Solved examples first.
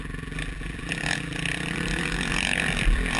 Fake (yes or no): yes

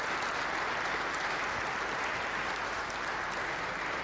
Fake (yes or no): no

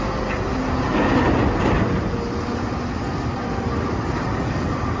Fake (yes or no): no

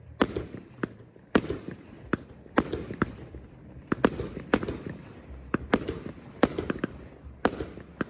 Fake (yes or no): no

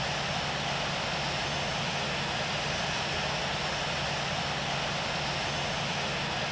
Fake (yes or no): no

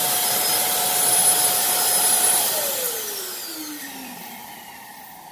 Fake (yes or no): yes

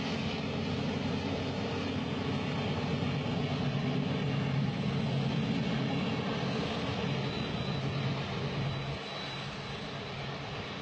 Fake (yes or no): no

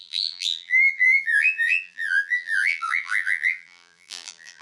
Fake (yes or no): yes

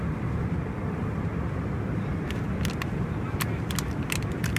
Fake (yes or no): no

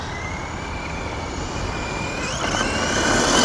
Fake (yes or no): no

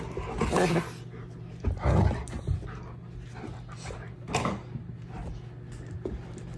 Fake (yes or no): no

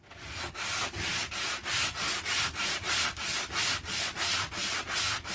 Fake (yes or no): no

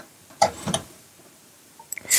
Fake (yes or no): yes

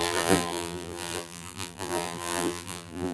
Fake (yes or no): yes